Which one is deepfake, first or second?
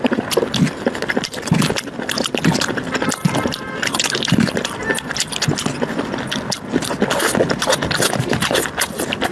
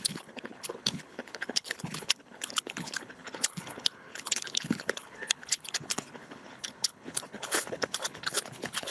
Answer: second